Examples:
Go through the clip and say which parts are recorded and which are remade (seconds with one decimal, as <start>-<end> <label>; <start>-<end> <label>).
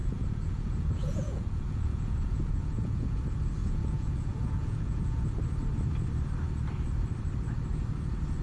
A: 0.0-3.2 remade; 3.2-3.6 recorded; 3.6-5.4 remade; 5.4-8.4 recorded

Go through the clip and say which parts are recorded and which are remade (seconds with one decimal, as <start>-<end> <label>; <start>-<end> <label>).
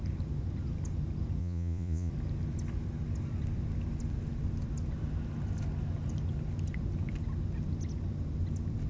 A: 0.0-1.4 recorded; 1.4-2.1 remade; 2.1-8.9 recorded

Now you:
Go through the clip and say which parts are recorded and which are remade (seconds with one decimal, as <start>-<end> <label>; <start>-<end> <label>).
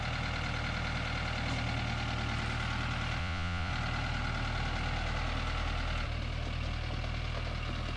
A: 0.0-3.2 recorded; 3.2-3.7 remade; 3.7-8.0 recorded